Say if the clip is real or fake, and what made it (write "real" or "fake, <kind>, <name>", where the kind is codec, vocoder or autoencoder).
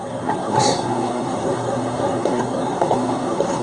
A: fake, codec, SNAC